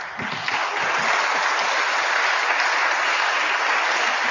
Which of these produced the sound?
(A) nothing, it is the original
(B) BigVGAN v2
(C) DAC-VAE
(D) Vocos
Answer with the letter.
A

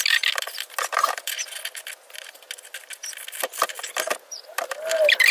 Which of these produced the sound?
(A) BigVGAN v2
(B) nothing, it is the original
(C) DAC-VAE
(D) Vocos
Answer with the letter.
B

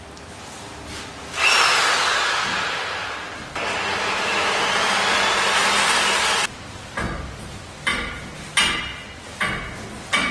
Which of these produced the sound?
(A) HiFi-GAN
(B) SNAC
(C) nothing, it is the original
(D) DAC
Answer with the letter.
C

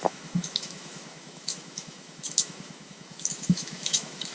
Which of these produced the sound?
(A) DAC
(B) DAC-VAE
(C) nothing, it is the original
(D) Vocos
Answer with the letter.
B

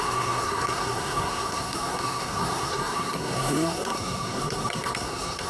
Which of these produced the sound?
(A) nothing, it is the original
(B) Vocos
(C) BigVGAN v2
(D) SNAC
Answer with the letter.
D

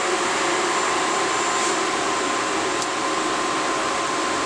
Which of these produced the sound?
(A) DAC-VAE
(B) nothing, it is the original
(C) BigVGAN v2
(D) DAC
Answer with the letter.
B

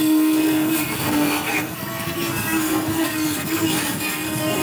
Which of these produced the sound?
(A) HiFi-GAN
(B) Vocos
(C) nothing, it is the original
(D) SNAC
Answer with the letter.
D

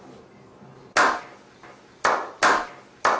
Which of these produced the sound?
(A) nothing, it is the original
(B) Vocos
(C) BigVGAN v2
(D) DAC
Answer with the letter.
A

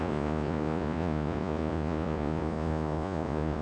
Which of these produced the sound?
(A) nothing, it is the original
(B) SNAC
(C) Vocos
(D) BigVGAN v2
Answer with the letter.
C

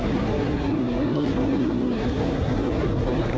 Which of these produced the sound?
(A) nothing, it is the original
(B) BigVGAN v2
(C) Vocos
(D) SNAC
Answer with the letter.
D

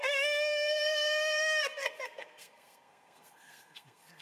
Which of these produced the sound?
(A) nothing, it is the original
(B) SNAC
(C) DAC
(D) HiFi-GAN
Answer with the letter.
B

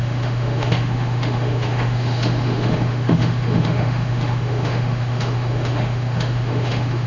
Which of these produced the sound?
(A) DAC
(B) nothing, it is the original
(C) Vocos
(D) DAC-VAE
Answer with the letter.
D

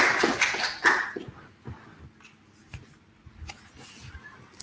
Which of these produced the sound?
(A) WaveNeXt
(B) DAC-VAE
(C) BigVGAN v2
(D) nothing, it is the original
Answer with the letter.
D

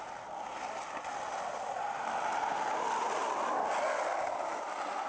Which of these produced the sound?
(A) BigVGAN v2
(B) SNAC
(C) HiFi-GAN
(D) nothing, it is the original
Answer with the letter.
D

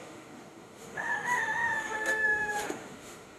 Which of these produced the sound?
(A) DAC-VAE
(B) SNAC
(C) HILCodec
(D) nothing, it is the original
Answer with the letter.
A